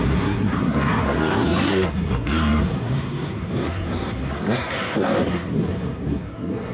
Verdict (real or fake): fake